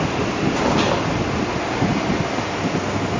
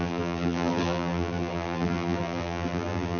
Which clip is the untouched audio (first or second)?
first